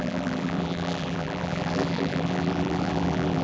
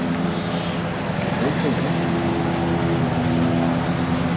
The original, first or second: second